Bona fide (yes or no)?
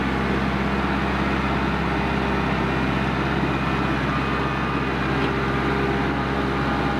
yes